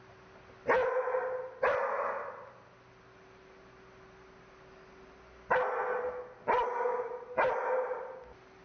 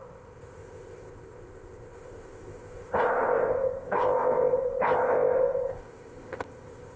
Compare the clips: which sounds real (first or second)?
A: first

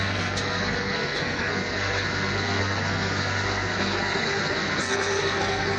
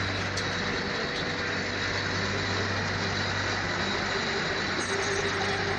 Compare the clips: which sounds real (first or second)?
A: second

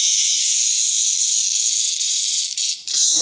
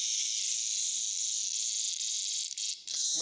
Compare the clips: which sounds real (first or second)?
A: second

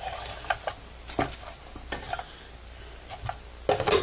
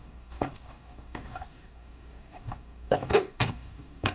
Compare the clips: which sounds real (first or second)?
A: first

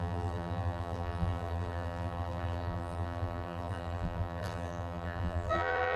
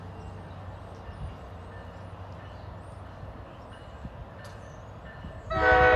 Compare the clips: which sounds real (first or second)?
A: second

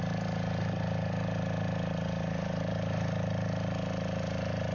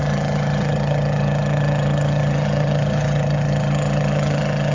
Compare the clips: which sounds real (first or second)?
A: first